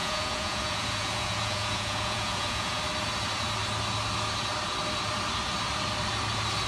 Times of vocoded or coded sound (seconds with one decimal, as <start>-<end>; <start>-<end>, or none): 0.0-2.8